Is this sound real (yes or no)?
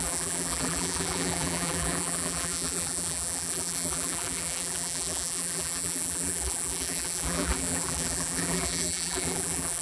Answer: no